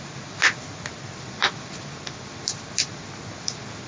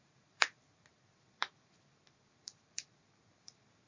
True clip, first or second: first